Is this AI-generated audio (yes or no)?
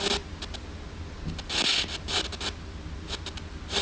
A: no